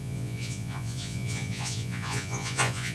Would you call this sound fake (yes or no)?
yes